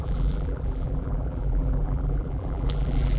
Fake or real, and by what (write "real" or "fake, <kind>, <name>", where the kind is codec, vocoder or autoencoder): fake, vocoder, BigVGAN v2